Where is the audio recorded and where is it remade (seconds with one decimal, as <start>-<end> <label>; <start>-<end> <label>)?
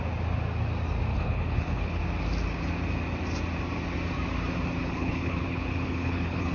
0.0-1.1 recorded; 1.1-2.0 remade; 2.0-4.8 recorded; 4.8-6.5 remade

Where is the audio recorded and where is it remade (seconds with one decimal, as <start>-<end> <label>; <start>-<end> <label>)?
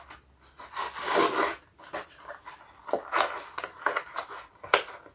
0.0-5.1 recorded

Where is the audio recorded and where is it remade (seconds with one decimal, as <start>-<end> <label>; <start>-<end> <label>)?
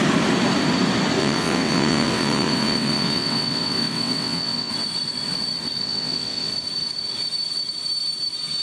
0.0-1.2 recorded; 1.2-4.7 remade; 4.7-5.8 recorded; 5.8-6.5 remade; 6.5-8.6 recorded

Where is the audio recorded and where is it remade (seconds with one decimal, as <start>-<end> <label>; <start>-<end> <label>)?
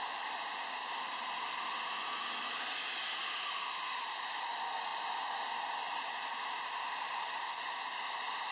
0.0-8.5 recorded